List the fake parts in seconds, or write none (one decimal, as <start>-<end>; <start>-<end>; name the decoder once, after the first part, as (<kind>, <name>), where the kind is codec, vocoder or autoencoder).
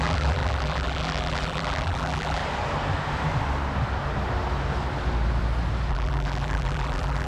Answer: 0.0-2.4 (vocoder, BigVGAN v2); 5.9-7.3